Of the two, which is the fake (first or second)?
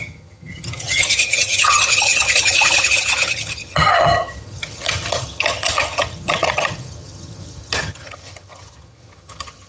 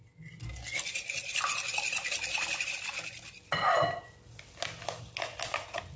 first